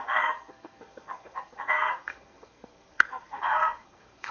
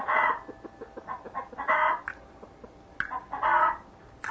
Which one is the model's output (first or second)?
first